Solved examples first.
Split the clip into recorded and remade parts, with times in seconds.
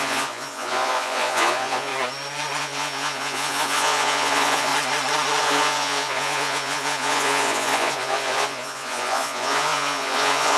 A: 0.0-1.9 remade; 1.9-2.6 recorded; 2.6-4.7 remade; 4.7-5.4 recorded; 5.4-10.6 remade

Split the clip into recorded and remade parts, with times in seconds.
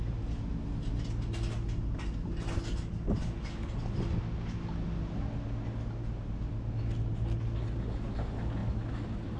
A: 0.0-9.4 recorded